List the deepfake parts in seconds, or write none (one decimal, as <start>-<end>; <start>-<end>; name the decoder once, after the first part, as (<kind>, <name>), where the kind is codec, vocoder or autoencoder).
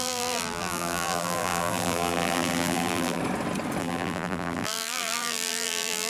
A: 0.0-3.2 (vocoder, BigVGAN v2); 3.8-6.1